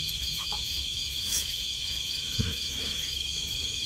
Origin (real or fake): fake